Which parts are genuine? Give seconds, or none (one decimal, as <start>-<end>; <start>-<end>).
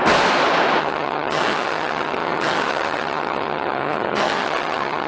0.0-0.8